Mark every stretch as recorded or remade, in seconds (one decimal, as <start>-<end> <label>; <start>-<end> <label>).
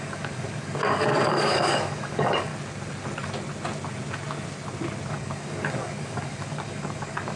0.0-2.5 remade; 2.5-5.1 recorded; 5.1-7.4 remade